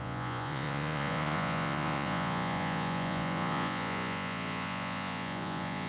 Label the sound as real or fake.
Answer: fake